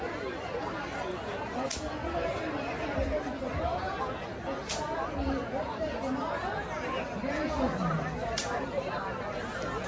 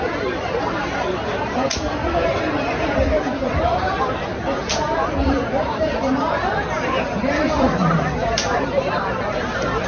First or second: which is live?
first